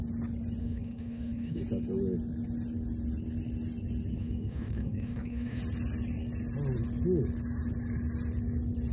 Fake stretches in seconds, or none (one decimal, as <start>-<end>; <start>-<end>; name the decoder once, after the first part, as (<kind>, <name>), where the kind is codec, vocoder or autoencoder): 0.6-1.6 (autoencoder, DAC-VAE); 4.2-5.6